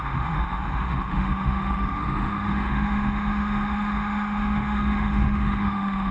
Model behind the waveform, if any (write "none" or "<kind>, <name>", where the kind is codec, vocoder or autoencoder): autoencoder, DAC-VAE